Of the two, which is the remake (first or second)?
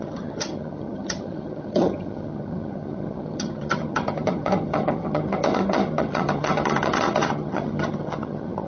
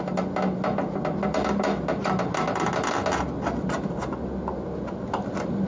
first